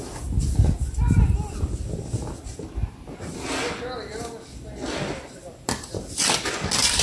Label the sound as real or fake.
real